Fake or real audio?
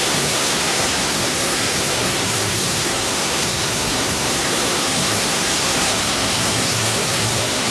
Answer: fake